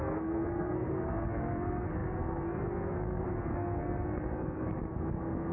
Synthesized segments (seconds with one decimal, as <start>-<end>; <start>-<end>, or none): 0.0-5.5